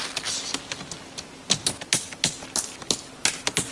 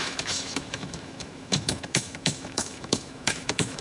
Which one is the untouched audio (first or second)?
first